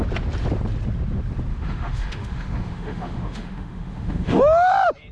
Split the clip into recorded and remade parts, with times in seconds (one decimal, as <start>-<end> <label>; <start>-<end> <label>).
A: 0.0-1.5 recorded; 1.5-4.4 remade; 4.4-5.1 recorded